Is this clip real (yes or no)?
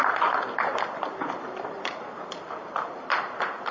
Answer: no